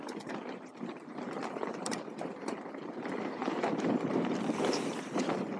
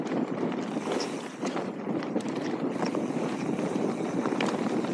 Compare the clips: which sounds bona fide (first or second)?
second